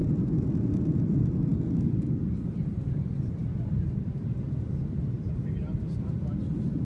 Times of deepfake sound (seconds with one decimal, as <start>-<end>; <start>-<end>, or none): none